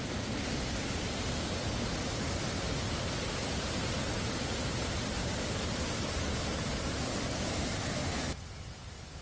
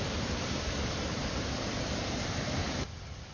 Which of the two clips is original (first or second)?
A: first